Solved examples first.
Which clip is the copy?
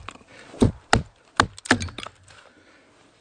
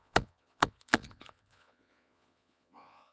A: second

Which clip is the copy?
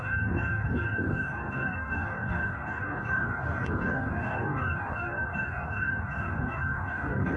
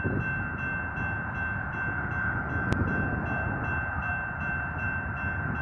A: first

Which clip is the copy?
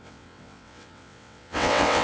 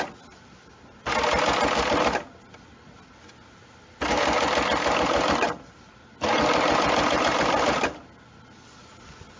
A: first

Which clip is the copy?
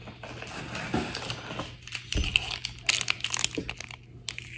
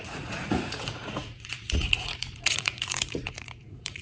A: second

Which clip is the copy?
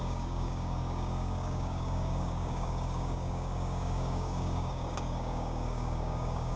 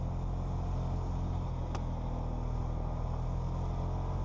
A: first